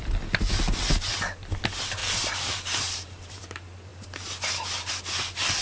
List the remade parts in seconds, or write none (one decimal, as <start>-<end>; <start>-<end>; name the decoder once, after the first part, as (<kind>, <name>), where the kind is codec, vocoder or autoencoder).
2.0-3.4 (vocoder, BigVGAN v2)